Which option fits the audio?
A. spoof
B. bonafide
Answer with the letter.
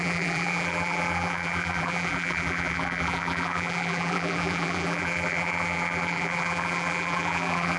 A